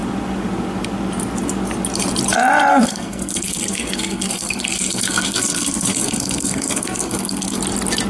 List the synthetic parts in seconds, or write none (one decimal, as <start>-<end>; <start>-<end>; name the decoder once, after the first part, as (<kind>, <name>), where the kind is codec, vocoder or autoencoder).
2.7-7.6 (codec, SNAC)